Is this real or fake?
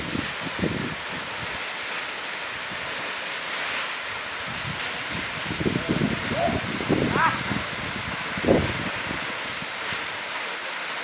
real